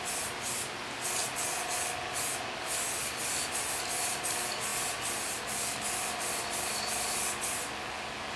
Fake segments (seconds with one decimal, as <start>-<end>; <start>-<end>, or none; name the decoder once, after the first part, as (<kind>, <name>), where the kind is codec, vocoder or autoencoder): none